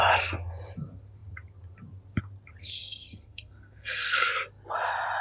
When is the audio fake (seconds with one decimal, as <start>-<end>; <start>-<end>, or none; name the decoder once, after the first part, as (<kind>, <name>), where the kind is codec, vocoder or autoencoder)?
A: 2.6-4.3 (codec, SNAC)